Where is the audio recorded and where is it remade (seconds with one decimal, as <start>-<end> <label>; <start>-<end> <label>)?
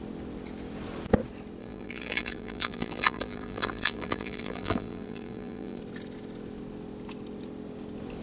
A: 0.0-1.6 recorded; 1.6-5.8 remade; 5.8-8.2 recorded